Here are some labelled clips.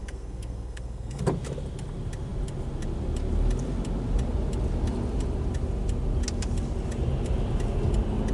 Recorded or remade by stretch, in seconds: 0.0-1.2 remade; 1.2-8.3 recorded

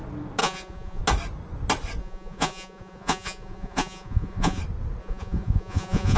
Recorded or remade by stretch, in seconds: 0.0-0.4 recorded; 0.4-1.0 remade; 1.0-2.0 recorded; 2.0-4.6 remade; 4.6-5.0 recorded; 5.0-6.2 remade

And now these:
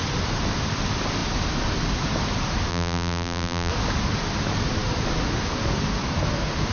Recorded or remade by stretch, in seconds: 0.0-2.7 recorded; 2.7-3.7 remade; 3.7-6.7 recorded